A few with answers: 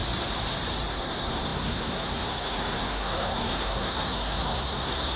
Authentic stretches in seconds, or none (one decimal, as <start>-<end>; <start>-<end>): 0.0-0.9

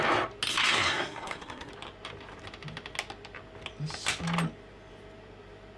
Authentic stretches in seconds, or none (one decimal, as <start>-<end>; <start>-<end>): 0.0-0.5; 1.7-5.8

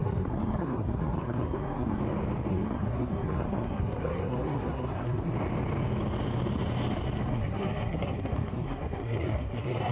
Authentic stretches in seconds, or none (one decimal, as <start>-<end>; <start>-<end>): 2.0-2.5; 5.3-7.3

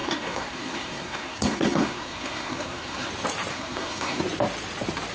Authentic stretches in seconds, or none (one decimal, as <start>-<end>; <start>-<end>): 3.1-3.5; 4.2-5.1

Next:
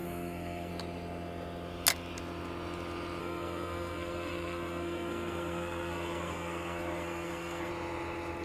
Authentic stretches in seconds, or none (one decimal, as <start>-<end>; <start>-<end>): 0.7-3.2; 7.7-8.4

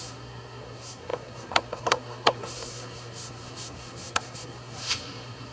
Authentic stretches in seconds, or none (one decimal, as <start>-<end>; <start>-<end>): none

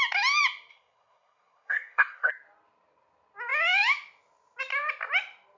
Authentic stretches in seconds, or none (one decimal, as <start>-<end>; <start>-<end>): 0.0-0.7; 2.3-5.6